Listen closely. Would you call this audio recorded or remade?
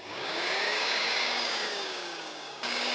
remade